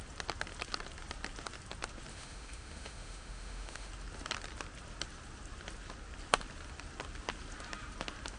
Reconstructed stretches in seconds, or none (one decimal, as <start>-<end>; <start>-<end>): 2.1-3.9